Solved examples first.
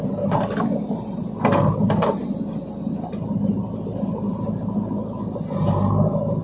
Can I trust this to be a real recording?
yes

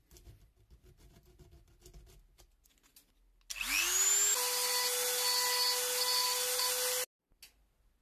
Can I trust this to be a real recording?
yes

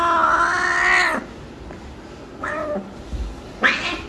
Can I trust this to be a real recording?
yes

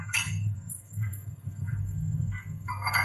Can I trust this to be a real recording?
no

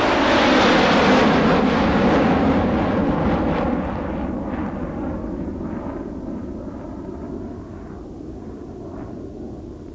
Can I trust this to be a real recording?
yes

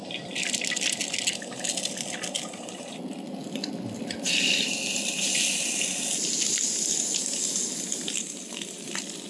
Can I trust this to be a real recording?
yes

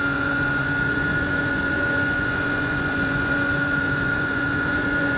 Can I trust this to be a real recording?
no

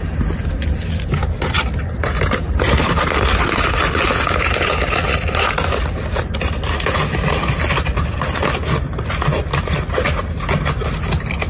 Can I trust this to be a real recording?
yes